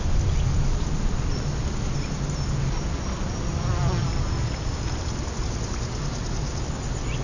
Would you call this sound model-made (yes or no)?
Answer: no